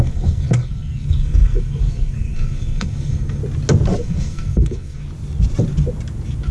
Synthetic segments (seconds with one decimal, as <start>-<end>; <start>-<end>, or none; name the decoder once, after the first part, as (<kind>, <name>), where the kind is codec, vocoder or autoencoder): 0.0-3.4 (codec, SNAC); 4.0-5.0